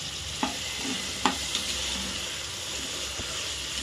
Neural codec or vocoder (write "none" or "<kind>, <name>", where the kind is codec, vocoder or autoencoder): none